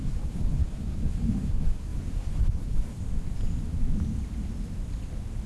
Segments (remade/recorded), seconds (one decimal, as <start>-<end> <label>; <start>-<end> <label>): 0.0-3.0 remade; 3.0-5.5 recorded